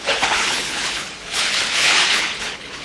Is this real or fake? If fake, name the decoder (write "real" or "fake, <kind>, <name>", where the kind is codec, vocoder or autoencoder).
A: fake, codec, HILCodec